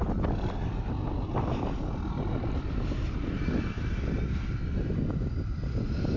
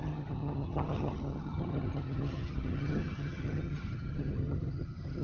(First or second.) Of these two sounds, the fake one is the second